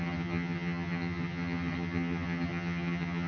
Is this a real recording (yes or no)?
no